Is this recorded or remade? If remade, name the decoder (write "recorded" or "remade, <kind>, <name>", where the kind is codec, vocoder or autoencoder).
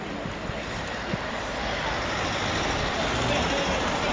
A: recorded